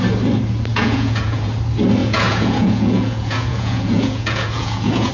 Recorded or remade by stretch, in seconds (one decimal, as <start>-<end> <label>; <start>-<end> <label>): 0.0-0.7 recorded; 0.7-1.5 remade; 1.5-2.0 recorded; 2.0-5.1 remade